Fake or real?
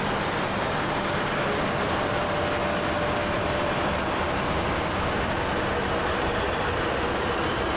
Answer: real